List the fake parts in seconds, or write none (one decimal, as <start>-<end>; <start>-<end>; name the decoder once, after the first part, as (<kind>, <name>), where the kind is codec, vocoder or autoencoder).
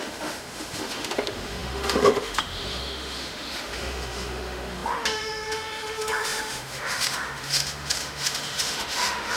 0.0-9.4 (autoencoder, DAC-VAE)